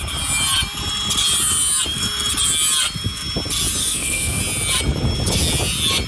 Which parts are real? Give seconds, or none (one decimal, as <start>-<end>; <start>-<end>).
0.0-3.8; 4.4-6.1